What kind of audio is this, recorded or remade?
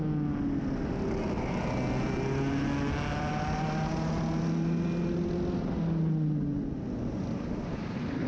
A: recorded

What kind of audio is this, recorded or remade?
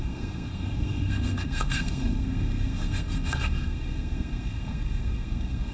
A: remade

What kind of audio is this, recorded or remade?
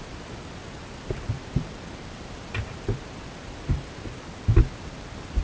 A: recorded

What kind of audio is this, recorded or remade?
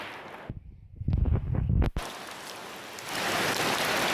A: recorded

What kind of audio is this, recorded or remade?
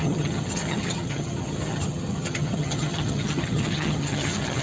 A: remade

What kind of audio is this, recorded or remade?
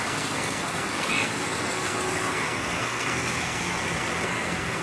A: remade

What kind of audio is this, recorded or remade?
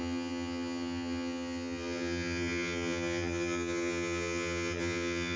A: remade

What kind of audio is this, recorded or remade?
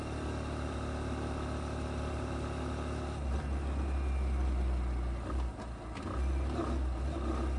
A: recorded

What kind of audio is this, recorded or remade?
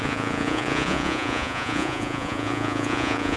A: remade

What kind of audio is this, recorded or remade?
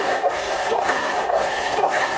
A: remade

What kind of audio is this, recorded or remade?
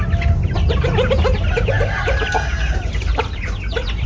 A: recorded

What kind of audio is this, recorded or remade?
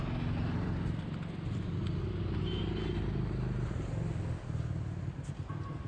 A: recorded